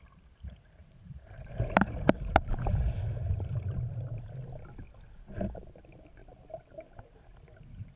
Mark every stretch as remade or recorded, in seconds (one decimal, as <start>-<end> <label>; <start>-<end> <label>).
0.0-0.8 recorded; 0.8-3.0 remade; 3.0-8.0 recorded